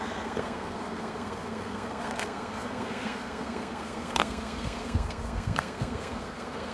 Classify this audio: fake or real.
fake